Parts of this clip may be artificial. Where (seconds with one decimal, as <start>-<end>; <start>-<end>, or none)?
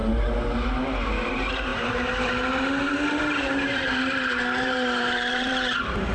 0.8-6.1